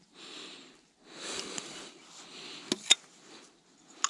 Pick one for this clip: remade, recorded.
recorded